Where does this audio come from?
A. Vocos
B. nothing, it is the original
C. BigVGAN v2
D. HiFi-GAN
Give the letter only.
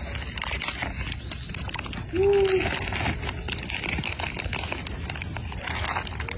B